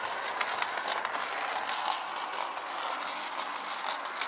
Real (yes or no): yes